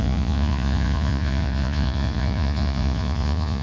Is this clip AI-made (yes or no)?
yes